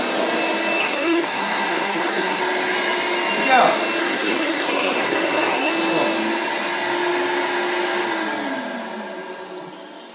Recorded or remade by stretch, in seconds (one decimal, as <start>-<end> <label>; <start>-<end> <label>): 0.0-0.8 recorded; 0.8-2.4 remade; 2.4-4.0 recorded; 4.0-5.7 remade; 5.7-10.1 recorded